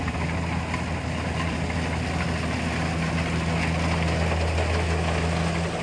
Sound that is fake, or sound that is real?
real